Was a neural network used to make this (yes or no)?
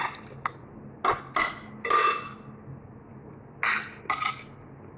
no